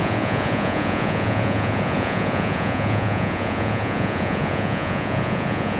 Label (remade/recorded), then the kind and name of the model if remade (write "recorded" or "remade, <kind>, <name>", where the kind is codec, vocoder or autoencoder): remade, vocoder, Vocos